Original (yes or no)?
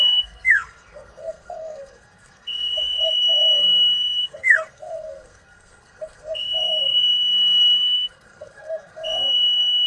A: no